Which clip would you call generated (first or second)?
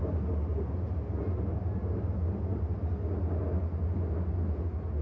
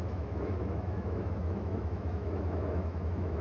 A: second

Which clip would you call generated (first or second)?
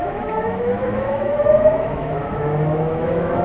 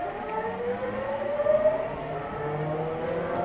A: first